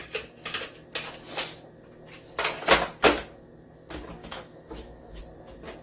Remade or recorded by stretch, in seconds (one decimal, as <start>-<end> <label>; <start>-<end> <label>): 0.0-4.2 recorded; 4.2-5.2 remade; 5.2-5.8 recorded